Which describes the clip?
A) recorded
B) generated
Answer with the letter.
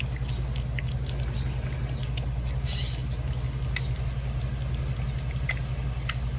A